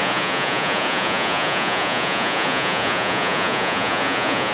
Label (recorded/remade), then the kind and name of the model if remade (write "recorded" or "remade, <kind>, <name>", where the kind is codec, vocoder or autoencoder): remade, vocoder, Vocos